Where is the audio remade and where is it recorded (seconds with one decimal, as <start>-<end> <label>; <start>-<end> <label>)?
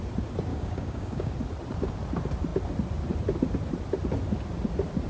0.0-0.5 recorded; 0.5-1.3 remade; 1.3-5.1 recorded